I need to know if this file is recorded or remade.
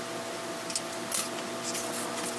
recorded